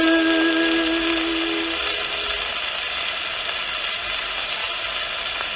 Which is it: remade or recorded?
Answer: recorded